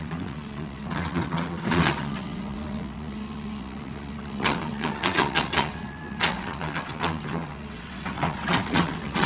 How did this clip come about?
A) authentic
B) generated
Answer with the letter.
B